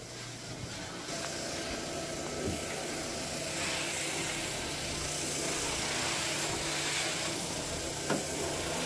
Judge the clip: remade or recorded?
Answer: recorded